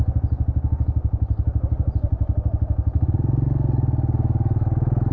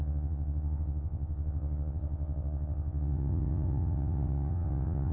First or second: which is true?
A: first